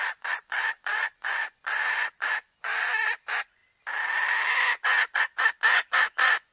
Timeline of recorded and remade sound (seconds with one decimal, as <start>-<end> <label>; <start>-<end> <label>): 0.0-3.6 remade; 3.6-4.5 recorded; 4.5-6.5 remade